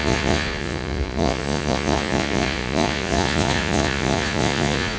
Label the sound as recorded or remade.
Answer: remade